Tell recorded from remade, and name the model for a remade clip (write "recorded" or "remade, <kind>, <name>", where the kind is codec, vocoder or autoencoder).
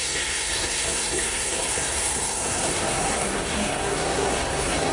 remade, codec, SNAC